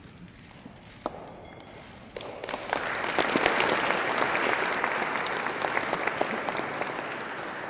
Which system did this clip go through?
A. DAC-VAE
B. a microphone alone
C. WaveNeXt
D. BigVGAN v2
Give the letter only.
B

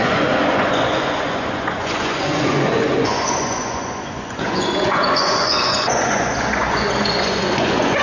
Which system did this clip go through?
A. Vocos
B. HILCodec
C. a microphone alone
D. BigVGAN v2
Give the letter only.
A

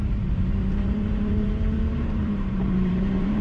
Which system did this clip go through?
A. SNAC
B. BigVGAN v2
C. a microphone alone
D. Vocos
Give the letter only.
B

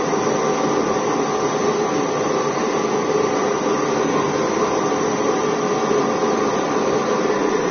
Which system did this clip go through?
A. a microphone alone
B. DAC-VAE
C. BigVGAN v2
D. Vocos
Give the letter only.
A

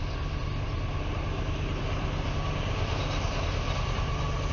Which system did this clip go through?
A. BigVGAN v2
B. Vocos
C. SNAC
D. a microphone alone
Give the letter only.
D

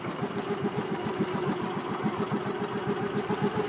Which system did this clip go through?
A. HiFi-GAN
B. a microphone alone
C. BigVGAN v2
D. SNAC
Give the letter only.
C